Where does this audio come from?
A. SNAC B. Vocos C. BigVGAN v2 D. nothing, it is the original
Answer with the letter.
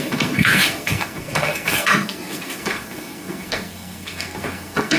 A